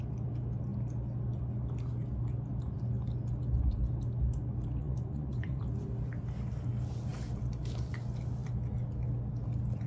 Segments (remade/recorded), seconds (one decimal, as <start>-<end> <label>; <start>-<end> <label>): 0.0-4.8 recorded; 4.8-5.6 remade; 5.6-9.9 recorded